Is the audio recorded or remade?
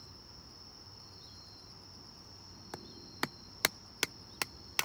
recorded